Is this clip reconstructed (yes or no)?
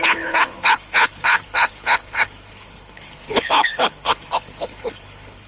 yes